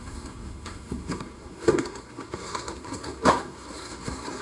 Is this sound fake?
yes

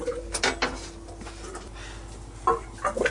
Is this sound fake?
no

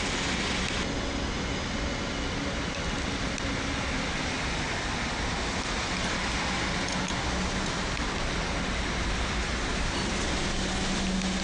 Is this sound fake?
no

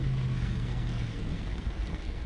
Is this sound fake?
yes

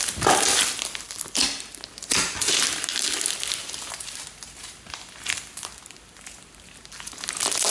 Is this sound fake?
no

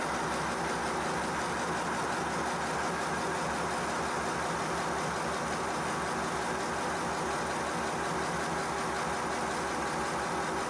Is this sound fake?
no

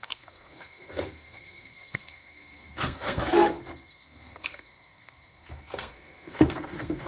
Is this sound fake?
yes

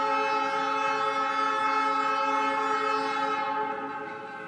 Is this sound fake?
no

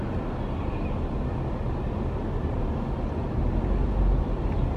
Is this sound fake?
no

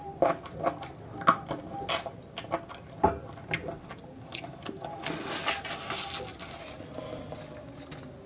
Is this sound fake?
no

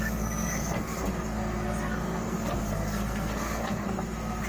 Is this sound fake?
yes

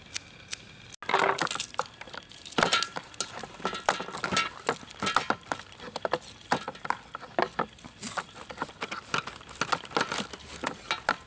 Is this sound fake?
no